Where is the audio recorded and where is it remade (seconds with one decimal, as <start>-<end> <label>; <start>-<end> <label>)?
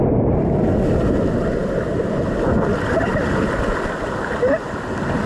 0.0-5.3 recorded